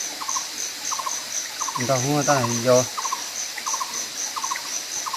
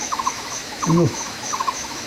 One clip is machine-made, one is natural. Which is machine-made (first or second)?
second